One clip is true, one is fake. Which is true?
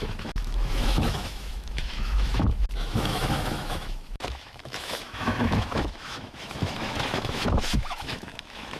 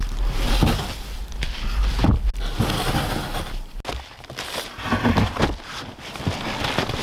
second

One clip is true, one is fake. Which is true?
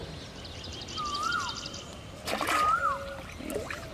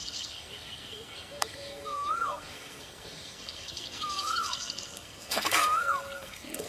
first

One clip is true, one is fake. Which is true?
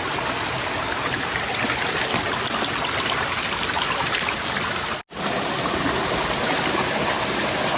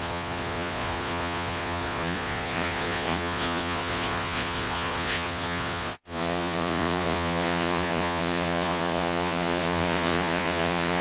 first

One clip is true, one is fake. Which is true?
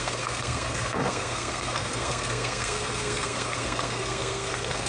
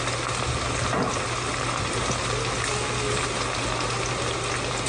second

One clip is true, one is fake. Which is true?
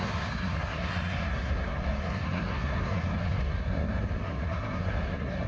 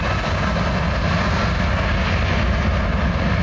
second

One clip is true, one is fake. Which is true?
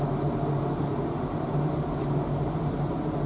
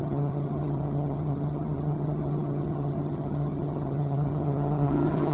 first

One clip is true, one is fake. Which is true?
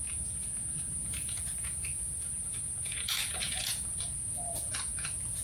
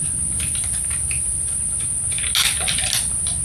second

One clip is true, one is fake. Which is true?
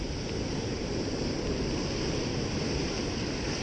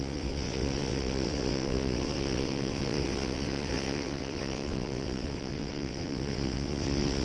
first